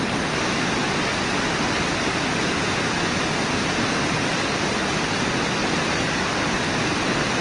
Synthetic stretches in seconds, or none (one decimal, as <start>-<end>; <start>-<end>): 5.6-6.7